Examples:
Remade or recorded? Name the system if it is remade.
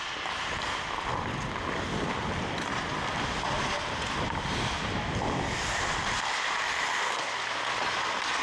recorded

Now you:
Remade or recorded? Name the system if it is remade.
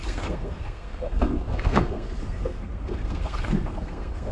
remade, codec, SNAC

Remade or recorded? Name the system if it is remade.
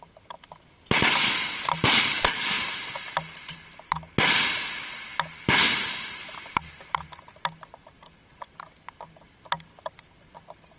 recorded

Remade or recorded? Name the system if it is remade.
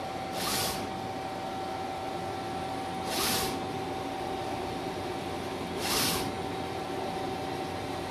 recorded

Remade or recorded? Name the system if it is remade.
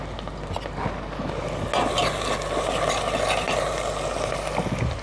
recorded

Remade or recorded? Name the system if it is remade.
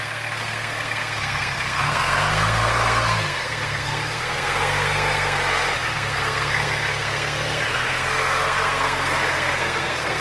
remade, codec, SNAC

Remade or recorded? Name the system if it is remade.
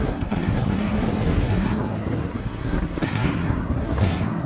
remade, codec, SNAC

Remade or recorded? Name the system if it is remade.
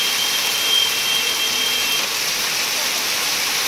recorded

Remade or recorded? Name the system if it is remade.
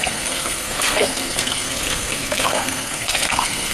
remade, codec, SNAC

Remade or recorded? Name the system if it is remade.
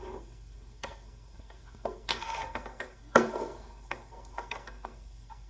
remade, codec, SNAC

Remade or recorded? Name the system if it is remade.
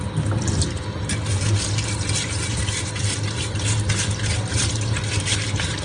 recorded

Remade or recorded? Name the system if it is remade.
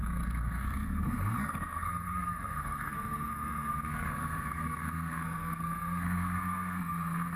remade, codec, SNAC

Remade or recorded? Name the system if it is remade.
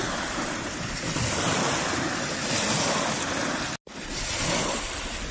recorded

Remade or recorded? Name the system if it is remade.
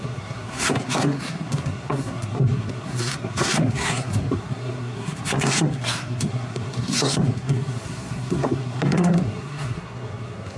remade, codec, SNAC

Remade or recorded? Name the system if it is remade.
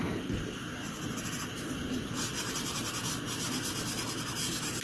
recorded